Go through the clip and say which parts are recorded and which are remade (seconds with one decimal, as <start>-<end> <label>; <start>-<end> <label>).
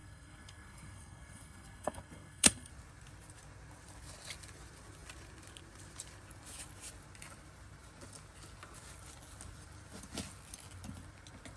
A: 0.0-2.7 remade; 2.7-11.6 recorded